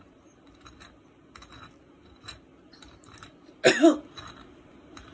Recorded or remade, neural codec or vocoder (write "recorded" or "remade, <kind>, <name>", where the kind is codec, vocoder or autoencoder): recorded